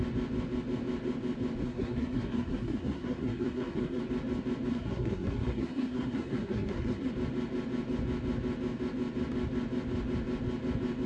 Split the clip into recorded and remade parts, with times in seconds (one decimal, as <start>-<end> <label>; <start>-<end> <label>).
0.0-1.6 recorded; 1.6-4.0 remade; 4.0-4.7 recorded; 4.7-7.1 remade; 7.1-11.1 recorded